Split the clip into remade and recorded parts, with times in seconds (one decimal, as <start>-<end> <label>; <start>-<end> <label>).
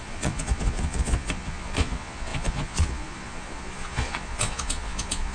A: 0.0-5.3 remade